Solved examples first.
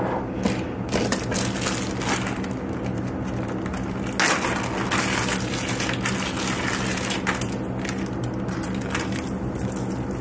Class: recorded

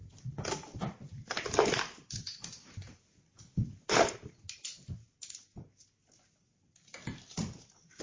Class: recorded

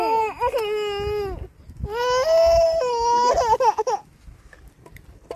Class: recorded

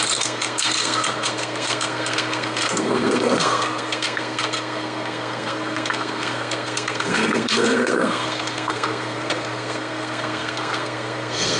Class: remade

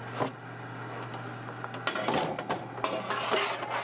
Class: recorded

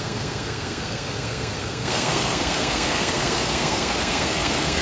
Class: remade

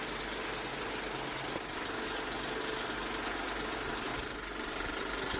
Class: recorded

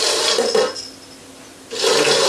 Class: recorded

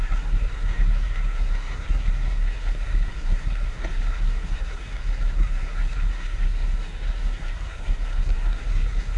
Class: remade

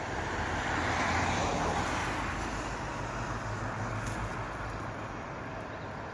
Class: recorded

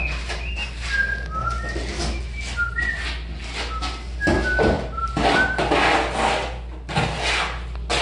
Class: recorded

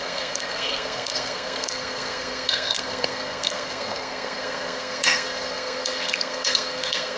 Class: remade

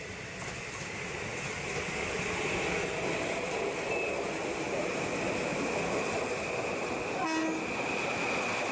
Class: recorded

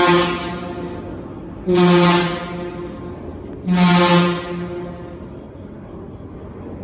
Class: recorded